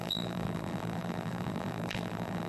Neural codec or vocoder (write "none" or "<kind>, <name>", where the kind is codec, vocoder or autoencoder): vocoder, BigVGAN v2